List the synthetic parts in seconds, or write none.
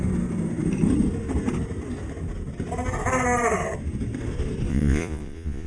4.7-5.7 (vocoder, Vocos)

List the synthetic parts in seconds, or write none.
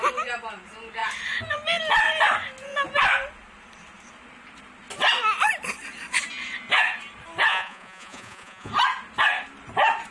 7.5-8.7 (vocoder, Vocos)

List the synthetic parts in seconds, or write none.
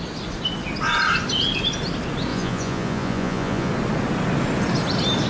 2.3-3.7 (vocoder, Vocos)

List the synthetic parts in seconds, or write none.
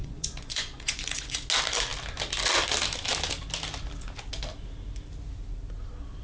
0.0-1.3 (vocoder, Vocos)